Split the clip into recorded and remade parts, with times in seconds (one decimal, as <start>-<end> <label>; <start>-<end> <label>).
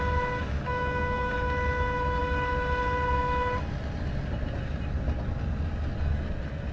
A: 0.0-0.4 recorded; 0.4-1.3 remade; 1.3-6.7 recorded